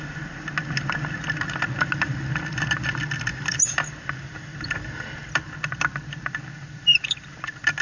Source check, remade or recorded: recorded